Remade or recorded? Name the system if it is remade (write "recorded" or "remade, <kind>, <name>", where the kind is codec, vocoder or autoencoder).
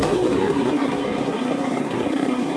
remade, codec, SNAC